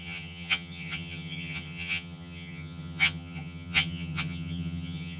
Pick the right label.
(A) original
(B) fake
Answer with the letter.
B